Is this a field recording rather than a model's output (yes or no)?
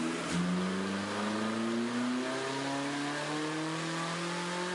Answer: yes